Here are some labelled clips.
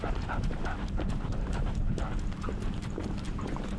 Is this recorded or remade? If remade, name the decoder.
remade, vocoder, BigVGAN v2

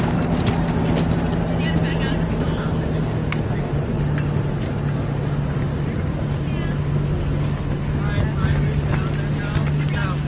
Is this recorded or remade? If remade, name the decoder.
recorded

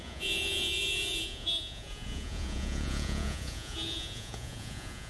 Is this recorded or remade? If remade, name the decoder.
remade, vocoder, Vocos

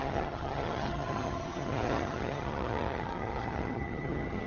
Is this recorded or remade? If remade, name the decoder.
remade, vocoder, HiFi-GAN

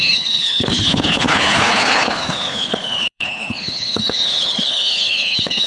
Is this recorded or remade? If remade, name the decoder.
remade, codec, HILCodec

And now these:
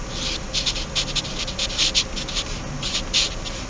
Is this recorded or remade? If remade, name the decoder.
recorded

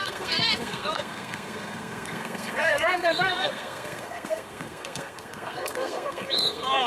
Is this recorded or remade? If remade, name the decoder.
remade, codec, SNAC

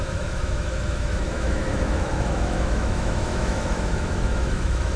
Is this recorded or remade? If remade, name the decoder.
remade, autoencoder, DAC-VAE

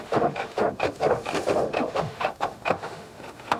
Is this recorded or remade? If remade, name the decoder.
remade, autoencoder, DAC-VAE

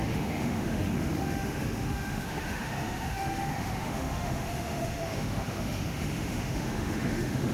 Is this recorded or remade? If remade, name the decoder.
remade, autoencoder, DAC-VAE